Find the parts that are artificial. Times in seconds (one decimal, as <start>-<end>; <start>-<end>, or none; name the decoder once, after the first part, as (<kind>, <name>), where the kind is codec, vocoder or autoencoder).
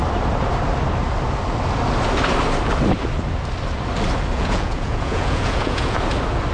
4.3-6.0 (vocoder, Vocos)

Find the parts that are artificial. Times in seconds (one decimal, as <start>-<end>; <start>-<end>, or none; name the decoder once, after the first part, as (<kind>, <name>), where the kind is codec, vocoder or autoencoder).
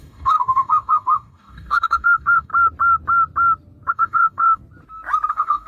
0.0-2.5 (codec, DAC); 3.9-4.6; 5.3-5.7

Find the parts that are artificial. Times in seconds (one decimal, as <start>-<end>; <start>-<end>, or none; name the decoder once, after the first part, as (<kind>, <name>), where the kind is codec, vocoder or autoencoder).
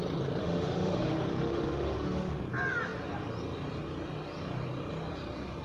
0.4-2.4 (autoencoder, DAC-VAE)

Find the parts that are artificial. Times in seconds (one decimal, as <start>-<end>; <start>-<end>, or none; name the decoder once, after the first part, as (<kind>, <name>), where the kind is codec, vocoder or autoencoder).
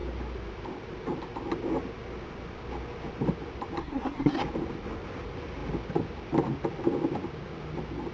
3.8-4.4 (codec, SNAC)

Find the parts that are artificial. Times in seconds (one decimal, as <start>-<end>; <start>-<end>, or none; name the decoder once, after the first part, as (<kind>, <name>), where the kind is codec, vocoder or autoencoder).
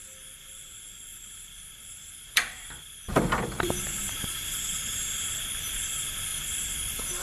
1.1-5.0 (vocoder, BigVGAN v2); 6.3-7.2